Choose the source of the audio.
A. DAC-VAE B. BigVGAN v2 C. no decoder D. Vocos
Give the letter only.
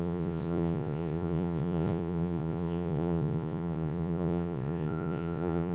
D